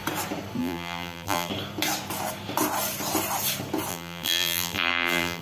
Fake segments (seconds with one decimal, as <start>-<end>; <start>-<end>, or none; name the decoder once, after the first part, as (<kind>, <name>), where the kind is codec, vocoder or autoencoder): 0.6-1.5 (vocoder, BigVGAN v2); 3.9-5.4